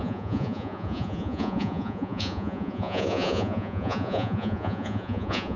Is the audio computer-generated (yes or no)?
yes